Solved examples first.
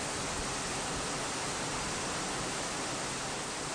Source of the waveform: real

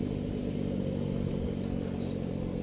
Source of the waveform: real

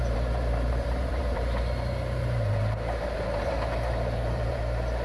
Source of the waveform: fake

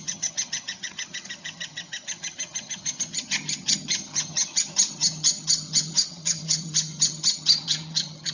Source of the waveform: fake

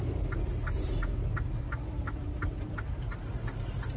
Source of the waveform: real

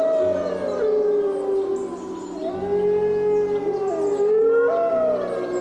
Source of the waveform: real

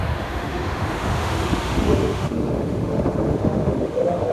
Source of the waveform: fake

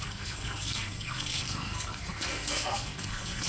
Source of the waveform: fake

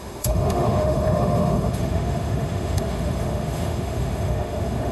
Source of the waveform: fake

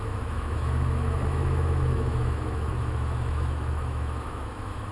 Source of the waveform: fake